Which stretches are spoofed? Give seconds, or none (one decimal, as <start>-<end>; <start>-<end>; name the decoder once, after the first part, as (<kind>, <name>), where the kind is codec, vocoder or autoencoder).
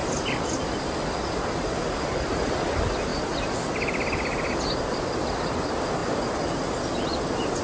none